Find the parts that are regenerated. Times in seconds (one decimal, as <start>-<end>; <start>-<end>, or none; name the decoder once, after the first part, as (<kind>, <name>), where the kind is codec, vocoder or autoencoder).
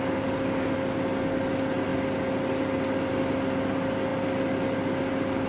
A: none